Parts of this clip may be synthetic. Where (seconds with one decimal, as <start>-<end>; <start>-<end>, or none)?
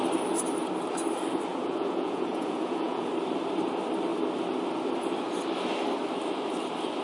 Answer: 1.5-3.1